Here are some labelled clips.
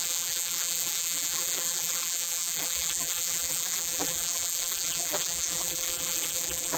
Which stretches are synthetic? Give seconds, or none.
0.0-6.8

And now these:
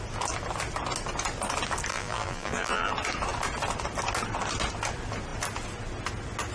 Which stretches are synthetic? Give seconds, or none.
1.9-2.9

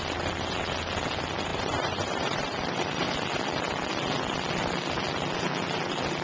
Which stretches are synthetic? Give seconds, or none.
1.5-3.1

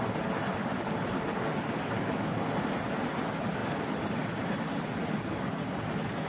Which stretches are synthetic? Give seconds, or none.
3.6-5.1

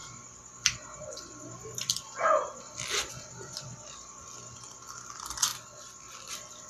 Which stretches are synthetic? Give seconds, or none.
0.0-5.5; 6.3-6.7

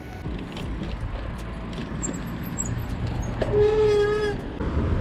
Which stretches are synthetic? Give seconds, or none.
none